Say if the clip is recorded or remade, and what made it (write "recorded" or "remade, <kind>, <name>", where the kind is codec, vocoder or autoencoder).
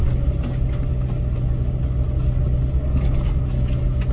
recorded